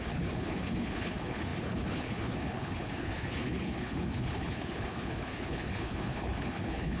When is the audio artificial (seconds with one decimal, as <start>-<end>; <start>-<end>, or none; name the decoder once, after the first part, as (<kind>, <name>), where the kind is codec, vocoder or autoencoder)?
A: 0.0-7.0 (codec, HILCodec)